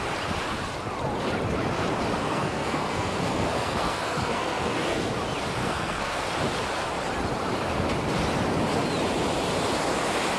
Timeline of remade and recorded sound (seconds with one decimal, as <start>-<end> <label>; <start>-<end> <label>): 0.0-2.2 recorded; 2.2-5.1 remade; 5.1-5.6 recorded; 5.6-6.3 remade; 6.3-10.4 recorded